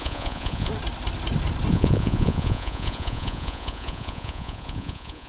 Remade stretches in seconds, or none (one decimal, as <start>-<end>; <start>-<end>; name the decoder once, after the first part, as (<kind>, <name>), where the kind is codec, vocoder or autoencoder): 0.0-0.7 (vocoder, Vocos); 1.7-5.3